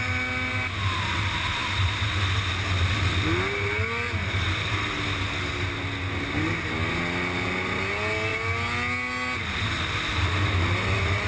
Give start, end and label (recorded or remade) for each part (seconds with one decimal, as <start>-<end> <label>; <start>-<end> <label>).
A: 0.0-11.3 recorded